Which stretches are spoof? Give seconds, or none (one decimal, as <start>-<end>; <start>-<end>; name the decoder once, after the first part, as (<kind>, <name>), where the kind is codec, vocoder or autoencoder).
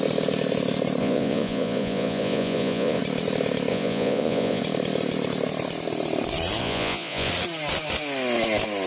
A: 1.0-3.0 (vocoder, Vocos); 3.7-4.6; 6.6-7.3